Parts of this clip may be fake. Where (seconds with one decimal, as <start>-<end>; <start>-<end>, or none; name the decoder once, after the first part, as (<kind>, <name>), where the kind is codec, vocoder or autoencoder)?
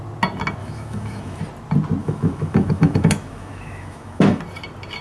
0.6-1.4 (autoencoder, DAC-VAE); 2.0-4.4